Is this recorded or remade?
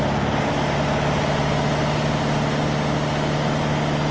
recorded